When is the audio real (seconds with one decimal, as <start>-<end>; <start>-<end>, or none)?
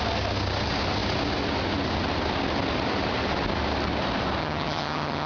0.0-4.4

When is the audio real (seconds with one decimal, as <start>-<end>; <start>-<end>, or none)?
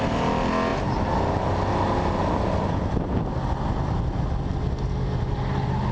0.0-5.9